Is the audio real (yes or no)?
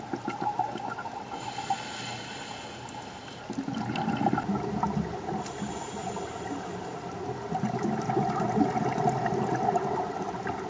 yes